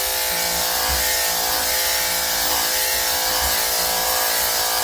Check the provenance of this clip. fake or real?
real